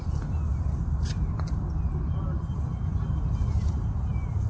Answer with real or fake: real